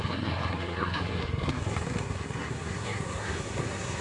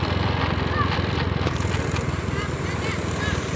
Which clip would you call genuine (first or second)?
second